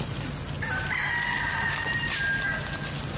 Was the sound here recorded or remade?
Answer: recorded